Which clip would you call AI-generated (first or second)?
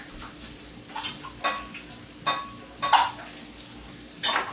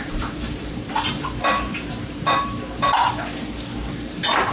second